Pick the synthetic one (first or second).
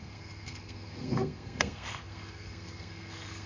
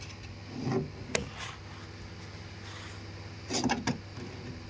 first